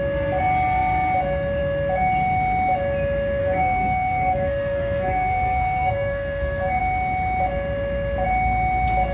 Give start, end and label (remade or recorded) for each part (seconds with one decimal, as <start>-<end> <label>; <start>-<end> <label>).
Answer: 0.0-3.4 recorded; 3.4-6.8 remade; 6.8-9.1 recorded